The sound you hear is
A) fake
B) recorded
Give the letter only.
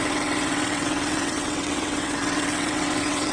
A